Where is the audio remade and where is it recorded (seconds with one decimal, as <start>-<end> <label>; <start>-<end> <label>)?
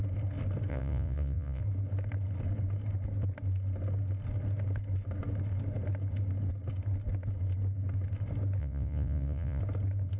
0.0-0.7 recorded; 0.7-1.6 remade; 1.6-8.6 recorded; 8.6-9.6 remade; 9.6-10.2 recorded